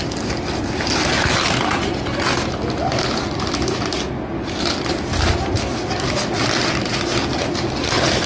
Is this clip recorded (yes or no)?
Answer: yes